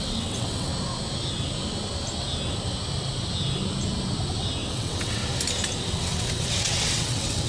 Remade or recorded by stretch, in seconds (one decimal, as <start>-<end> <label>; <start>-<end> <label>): 0.0-0.7 remade; 0.7-4.7 recorded; 4.7-5.2 remade; 5.2-5.9 recorded; 5.9-7.5 remade